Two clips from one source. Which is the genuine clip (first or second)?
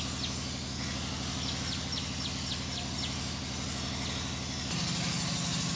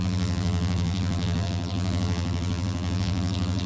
first